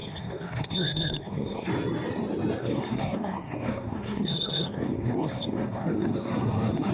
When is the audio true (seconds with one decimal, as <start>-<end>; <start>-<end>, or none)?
1.7-2.6